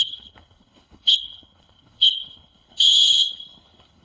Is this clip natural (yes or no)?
no